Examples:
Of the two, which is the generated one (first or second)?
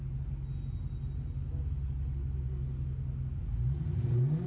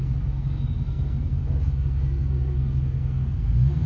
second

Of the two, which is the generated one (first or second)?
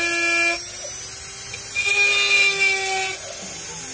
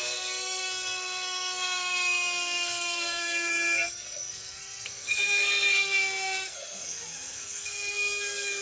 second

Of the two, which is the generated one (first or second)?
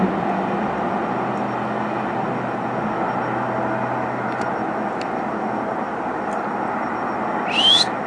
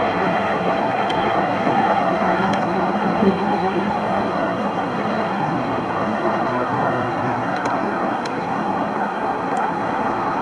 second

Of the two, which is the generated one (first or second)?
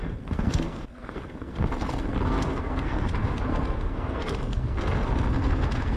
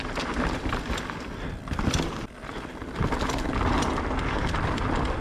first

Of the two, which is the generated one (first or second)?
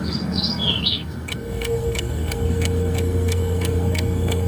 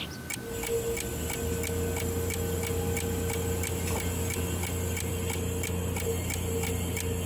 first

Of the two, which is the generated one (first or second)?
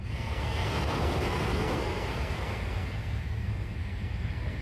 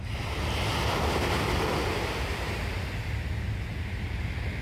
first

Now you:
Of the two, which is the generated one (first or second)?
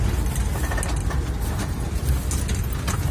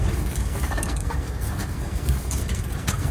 second